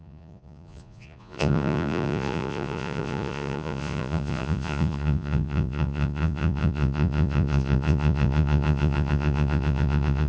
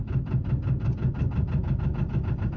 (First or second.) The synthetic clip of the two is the first